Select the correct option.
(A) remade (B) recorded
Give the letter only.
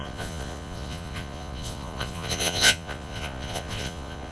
A